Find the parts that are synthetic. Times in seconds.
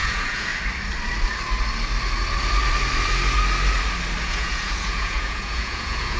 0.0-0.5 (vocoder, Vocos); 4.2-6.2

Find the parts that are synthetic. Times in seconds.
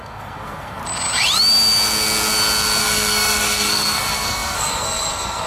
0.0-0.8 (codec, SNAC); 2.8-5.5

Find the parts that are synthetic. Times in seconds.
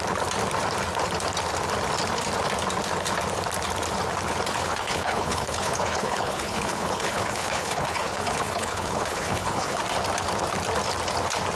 4.6-9.8 (codec, HILCodec)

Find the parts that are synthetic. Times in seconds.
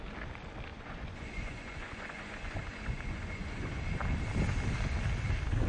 0.7-3.8 (vocoder, Vocos)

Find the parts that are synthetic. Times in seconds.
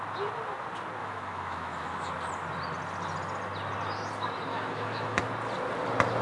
1.0-2.1 (autoencoder, DAC-VAE); 4.5-5.2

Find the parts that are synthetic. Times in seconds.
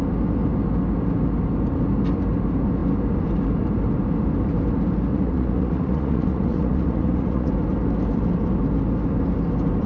5.1-7.5 (vocoder, Vocos)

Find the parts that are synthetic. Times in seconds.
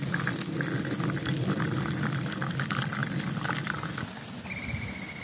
none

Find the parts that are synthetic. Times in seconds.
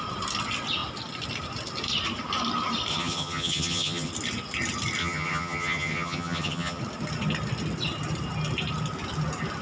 2.9-4.1 (vocoder, HiFi-GAN); 5.0-6.8